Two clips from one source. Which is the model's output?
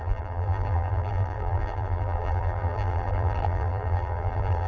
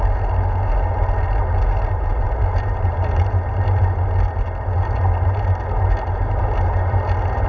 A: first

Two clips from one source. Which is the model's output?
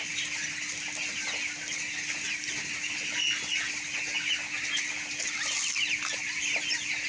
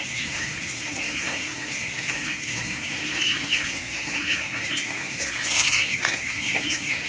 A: second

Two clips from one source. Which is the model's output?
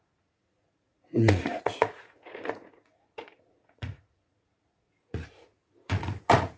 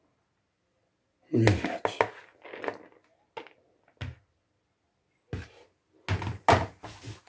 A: first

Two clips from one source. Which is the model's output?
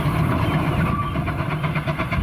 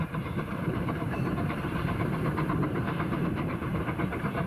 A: second